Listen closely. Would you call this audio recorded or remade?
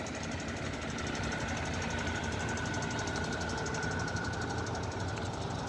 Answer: recorded